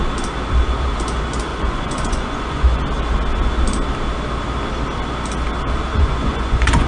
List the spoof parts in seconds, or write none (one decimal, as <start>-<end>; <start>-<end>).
1.5-2.8; 5.9-6.9